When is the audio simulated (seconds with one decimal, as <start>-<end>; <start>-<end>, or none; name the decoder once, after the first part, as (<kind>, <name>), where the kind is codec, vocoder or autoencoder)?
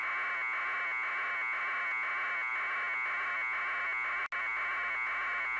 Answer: none